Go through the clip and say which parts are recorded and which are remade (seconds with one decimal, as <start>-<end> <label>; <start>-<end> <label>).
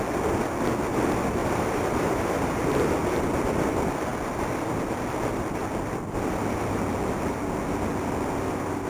0.0-1.4 recorded; 1.4-2.6 remade; 2.6-8.9 recorded